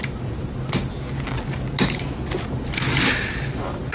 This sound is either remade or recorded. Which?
recorded